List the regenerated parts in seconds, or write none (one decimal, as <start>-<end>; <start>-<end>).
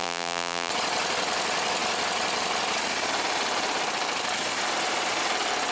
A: 0.0-0.7